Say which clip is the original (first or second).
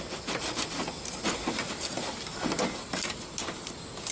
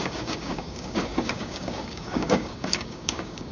first